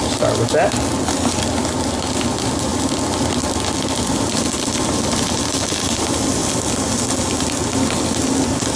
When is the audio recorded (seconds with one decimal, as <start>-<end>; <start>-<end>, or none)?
0.0-8.8

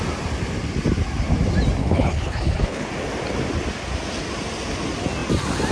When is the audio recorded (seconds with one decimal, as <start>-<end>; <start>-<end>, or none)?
0.0-1.8; 2.9-5.7